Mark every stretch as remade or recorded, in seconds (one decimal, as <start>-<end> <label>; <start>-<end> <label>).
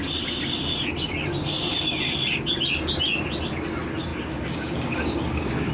0.0-4.1 recorded; 4.1-5.7 remade